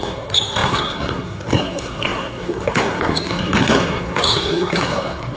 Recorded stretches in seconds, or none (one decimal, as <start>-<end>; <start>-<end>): none